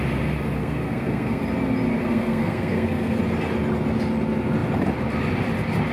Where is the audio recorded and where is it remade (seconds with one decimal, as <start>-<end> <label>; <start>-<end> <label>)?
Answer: 0.0-0.6 recorded; 0.6-1.4 remade; 1.4-2.0 recorded; 2.0-3.2 remade; 3.2-5.9 recorded